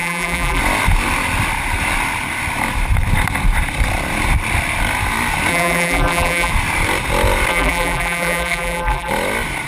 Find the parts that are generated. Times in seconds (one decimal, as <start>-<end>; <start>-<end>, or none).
0.0-0.6; 5.5-6.5; 7.5-9.1

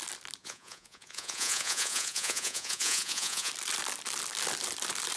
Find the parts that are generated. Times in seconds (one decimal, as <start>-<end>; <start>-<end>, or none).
0.4-3.5

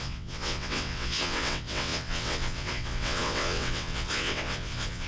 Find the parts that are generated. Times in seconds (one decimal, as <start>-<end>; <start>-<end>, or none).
0.0-5.1

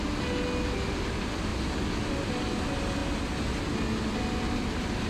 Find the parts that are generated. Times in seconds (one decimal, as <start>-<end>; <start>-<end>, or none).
none

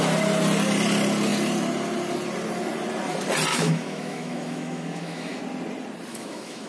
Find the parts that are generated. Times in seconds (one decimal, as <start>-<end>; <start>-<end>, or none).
3.5-5.4; 6.1-6.7

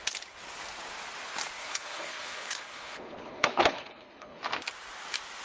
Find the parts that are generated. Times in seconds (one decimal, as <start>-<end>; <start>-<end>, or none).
1.6-4.4

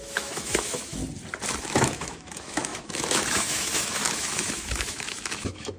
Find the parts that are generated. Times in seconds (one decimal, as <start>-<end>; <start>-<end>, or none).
0.0-1.0; 1.6-5.8

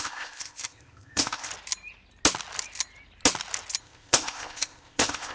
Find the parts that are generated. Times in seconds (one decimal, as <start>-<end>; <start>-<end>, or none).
0.0-1.5; 3.8-5.3